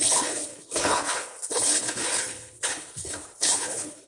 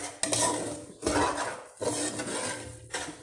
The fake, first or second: first